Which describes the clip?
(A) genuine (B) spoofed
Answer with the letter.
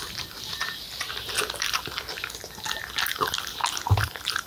A